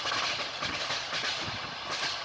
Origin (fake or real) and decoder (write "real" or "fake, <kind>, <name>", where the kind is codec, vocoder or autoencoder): real